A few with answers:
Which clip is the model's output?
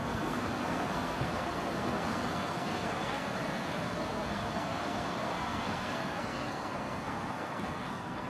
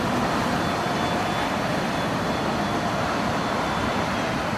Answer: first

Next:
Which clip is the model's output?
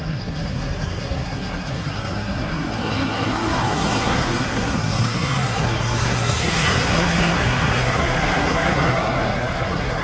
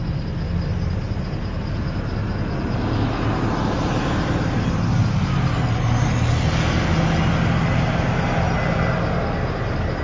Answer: first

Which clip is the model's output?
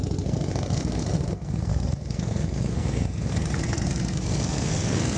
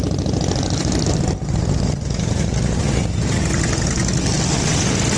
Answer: first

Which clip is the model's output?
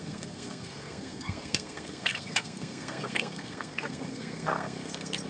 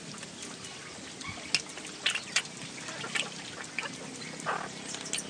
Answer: first